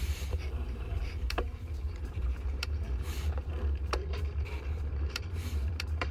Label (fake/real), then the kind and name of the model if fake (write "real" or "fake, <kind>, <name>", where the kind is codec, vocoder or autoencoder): fake, vocoder, BigVGAN v2